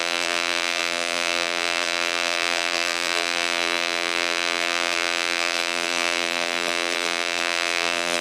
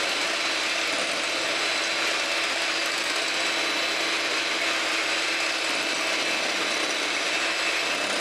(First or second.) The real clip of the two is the second